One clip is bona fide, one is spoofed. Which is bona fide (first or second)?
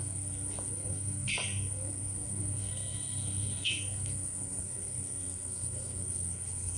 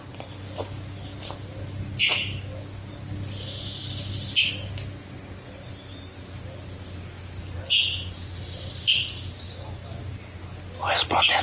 second